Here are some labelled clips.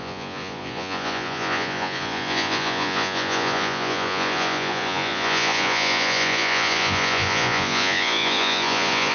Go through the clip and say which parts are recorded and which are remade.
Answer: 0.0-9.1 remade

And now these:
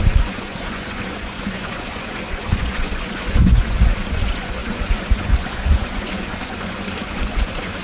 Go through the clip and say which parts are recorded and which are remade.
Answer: 0.0-7.8 remade

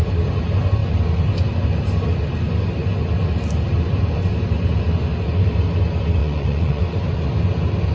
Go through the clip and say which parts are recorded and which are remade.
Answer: 0.0-6.2 recorded; 6.2-6.8 remade; 6.8-7.9 recorded

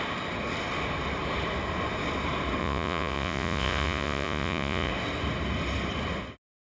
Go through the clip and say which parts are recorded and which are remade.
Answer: 0.0-2.6 recorded; 2.6-4.9 remade; 4.9-6.8 recorded

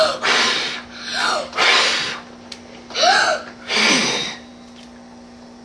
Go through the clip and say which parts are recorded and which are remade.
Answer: 0.0-5.6 recorded